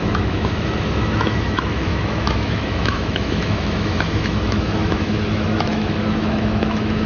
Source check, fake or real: fake